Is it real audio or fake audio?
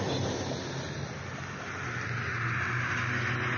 real